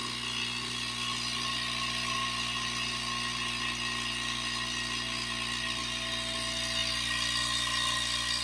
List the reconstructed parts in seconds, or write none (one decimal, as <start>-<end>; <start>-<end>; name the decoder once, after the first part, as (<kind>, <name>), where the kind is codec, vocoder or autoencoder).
none